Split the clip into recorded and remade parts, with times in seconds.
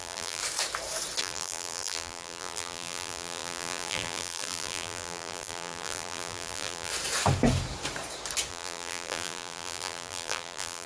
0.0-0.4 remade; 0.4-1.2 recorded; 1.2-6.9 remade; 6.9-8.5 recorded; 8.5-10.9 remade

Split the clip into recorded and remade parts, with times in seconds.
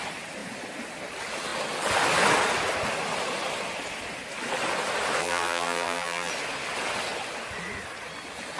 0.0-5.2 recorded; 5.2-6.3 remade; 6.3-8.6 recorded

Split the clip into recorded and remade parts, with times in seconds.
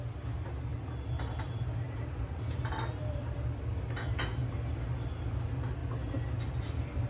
0.0-7.1 recorded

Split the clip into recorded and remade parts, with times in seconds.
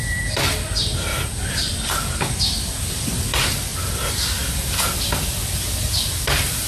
0.0-6.7 remade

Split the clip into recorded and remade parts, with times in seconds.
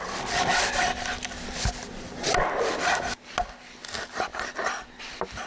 0.0-5.5 recorded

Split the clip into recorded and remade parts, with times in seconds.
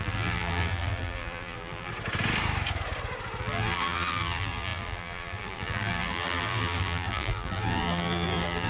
0.0-1.9 remade; 1.9-3.4 recorded; 3.4-8.7 remade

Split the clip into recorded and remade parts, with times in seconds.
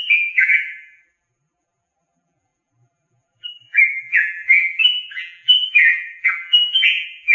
0.0-7.3 remade